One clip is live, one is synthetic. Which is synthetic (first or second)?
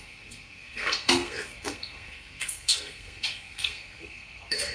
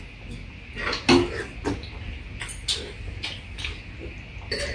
first